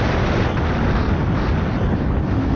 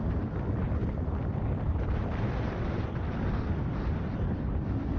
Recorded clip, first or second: first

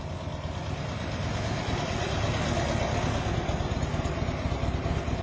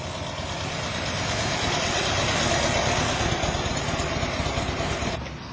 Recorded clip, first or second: first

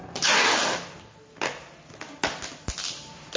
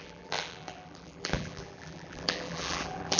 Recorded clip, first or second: first